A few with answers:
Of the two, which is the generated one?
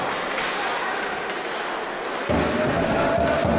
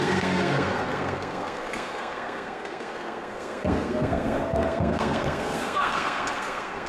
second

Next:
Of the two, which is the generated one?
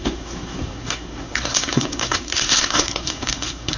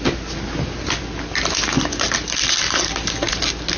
first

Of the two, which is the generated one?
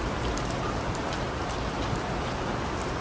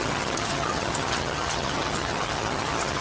second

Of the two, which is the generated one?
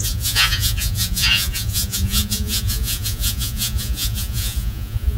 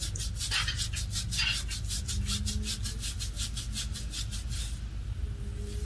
first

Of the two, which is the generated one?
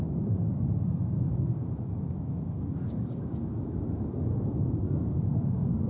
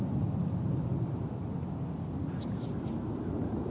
first